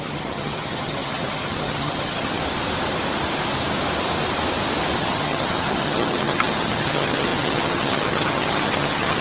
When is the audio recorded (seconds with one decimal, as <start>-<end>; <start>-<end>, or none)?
2.4-5.0